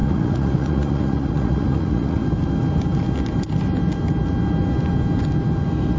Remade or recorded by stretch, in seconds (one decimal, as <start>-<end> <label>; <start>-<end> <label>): 0.0-2.2 remade; 2.2-6.0 recorded